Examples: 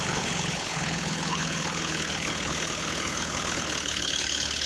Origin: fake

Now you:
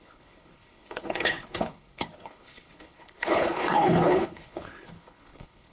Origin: fake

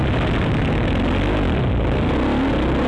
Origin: real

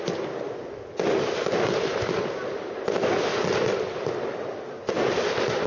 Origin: real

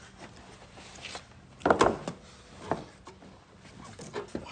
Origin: real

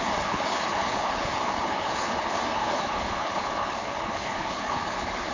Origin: fake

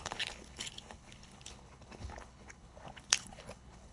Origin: fake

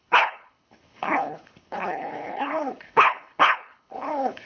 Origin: fake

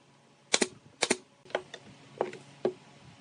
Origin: real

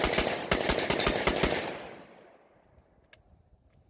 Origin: real